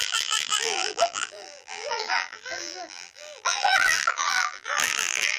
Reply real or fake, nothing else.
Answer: fake